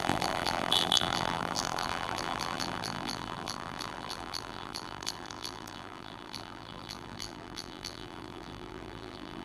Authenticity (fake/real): fake